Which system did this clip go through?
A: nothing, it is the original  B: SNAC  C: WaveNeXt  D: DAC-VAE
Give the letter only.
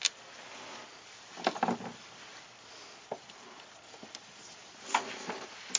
A